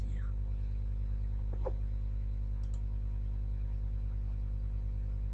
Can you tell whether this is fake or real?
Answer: real